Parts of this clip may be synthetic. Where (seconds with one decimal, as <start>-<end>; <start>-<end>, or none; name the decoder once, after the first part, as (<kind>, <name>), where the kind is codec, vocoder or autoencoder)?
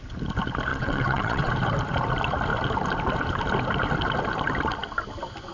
0.7-1.5 (vocoder, WaveNeXt)